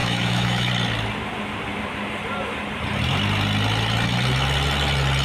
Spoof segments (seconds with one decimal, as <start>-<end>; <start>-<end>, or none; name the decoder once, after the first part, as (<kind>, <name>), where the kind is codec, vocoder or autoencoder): 0.0-0.7 (autoencoder, DAC-VAE)